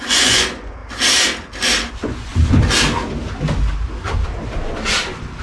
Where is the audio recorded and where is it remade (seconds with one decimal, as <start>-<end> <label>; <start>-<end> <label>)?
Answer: 0.0-0.8 remade; 0.8-1.9 recorded; 1.9-2.3 remade; 2.3-5.4 recorded